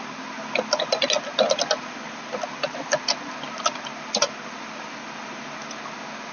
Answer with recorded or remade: recorded